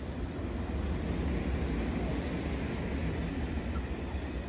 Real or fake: real